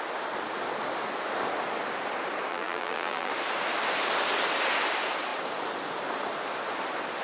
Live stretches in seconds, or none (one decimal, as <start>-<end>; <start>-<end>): 0.0-2.5; 3.3-7.2